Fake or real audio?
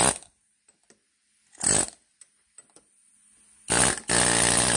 real